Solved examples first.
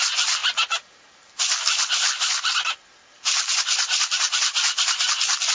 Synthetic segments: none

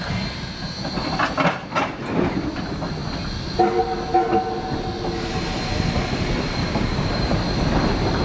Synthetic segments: 6.6-7.3